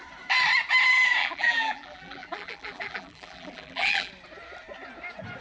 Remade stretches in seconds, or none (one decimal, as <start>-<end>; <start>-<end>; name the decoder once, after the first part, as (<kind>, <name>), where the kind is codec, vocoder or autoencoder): 1.2-4.1 (vocoder, BigVGAN v2)